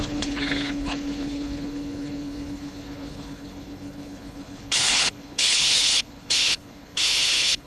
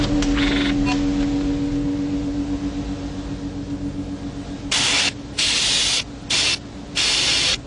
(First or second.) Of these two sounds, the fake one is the first